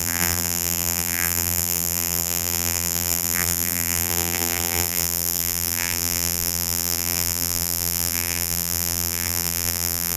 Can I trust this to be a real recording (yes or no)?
no